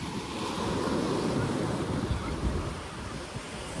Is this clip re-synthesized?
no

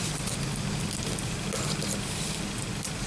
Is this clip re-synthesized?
no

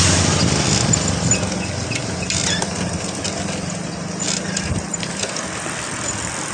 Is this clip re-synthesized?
no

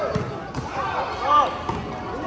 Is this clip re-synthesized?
no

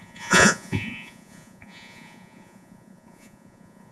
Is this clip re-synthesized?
yes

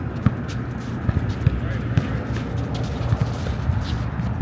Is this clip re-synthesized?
no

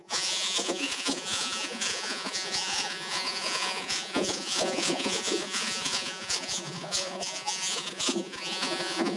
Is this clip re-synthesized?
yes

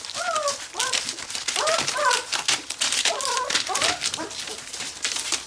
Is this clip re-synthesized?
no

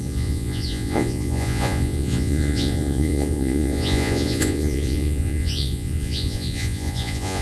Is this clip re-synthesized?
yes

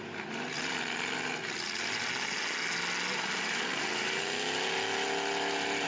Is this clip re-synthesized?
no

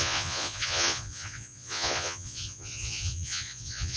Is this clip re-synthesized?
yes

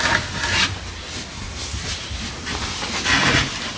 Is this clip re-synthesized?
no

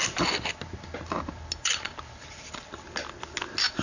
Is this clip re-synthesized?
no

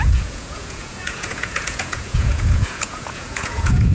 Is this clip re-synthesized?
yes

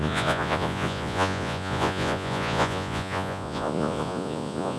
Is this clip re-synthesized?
yes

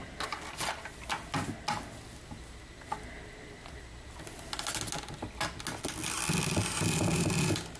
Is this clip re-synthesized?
no